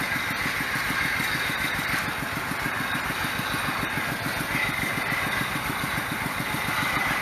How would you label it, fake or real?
real